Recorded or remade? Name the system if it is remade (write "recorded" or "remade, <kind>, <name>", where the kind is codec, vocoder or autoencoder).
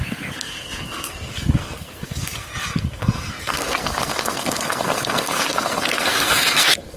remade, codec, SNAC